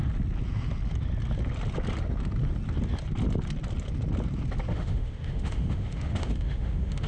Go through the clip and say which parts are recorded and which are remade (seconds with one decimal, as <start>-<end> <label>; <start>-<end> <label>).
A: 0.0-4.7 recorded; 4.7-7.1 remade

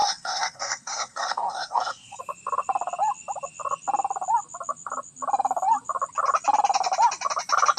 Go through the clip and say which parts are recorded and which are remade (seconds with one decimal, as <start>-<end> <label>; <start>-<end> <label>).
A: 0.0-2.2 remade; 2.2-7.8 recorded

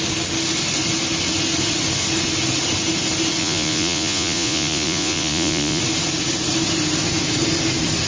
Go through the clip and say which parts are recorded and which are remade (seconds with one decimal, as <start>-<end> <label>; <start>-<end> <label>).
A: 0.0-3.4 recorded; 3.4-5.8 remade; 5.8-8.1 recorded

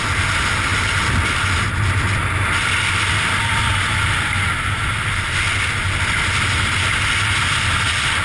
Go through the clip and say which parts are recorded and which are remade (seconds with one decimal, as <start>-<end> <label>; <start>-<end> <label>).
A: 0.0-8.2 recorded

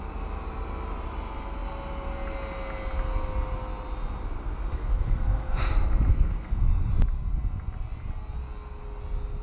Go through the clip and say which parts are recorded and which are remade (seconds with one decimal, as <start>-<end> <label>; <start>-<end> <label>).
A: 0.0-4.7 recorded; 4.7-5.6 remade; 5.6-6.1 recorded; 6.1-6.9 remade; 6.9-9.4 recorded

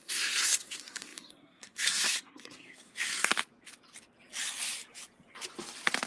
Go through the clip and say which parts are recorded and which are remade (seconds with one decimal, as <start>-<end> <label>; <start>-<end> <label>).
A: 0.0-3.3 remade; 3.3-6.1 recorded